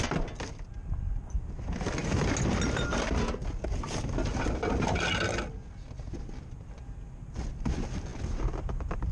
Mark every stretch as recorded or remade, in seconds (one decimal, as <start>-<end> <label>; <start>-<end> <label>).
0.0-2.0 remade; 2.0-6.0 recorded; 6.0-9.1 remade